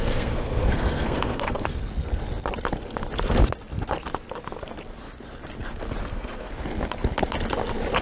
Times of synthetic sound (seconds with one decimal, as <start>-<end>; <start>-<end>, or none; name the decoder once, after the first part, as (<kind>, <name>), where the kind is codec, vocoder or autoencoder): 0.0-1.8 (codec, SNAC); 6.0-6.5